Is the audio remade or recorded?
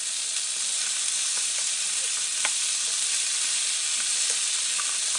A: recorded